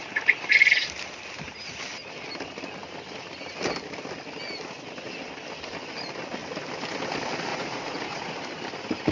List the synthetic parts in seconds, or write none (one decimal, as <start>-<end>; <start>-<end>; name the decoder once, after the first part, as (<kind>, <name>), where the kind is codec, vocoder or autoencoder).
7.5-8.3 (vocoder, Vocos)